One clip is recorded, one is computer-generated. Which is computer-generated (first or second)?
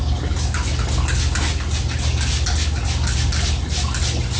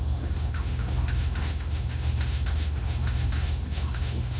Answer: second